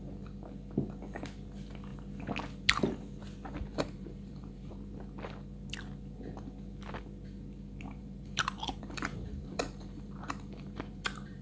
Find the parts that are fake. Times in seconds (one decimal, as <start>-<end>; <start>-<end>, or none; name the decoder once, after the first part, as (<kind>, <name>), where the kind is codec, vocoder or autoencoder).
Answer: 3.7-4.7 (vocoder, BigVGAN v2); 8.0-11.4